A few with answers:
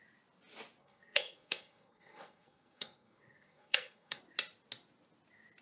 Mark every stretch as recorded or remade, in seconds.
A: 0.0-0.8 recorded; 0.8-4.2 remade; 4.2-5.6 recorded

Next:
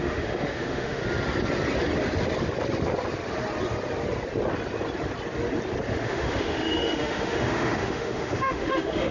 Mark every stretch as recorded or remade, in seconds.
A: 0.0-1.0 remade; 1.0-6.0 recorded; 6.0-9.1 remade